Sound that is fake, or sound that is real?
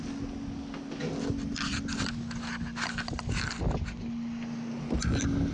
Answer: real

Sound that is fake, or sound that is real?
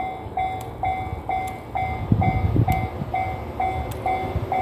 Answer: real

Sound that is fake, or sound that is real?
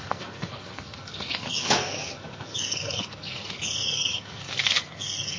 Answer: fake